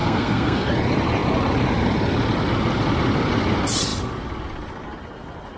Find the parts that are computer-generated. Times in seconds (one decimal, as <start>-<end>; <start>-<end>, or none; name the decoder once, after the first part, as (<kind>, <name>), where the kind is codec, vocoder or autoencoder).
0.0-0.7 (codec, SNAC)